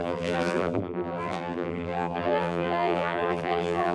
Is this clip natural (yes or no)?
no